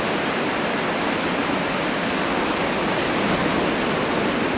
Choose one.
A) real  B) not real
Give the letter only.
A